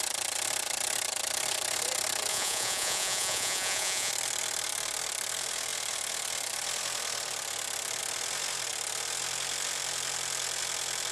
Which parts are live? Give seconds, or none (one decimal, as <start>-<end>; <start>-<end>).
0.0-2.3; 4.1-11.1